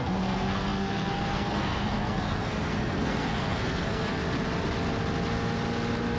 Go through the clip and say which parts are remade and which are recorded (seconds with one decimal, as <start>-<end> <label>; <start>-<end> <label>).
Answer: 0.0-4.2 remade; 4.2-6.2 recorded